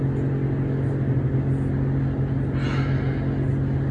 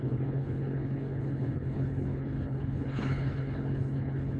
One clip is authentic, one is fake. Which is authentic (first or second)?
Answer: first